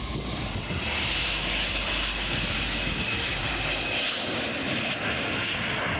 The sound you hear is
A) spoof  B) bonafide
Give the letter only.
B